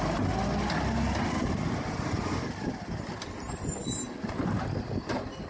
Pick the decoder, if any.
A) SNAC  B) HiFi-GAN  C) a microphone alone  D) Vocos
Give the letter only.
C